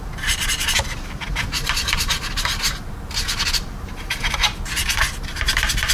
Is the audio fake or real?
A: fake